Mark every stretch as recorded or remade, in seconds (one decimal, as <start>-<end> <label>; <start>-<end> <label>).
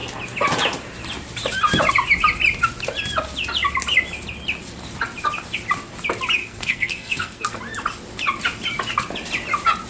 0.0-6.4 recorded; 6.4-7.6 remade; 7.6-9.9 recorded